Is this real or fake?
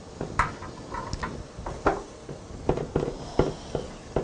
real